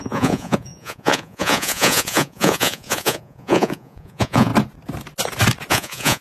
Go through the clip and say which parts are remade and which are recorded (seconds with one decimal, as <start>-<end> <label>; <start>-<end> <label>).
0.0-4.5 remade; 4.5-5.7 recorded; 5.7-6.2 remade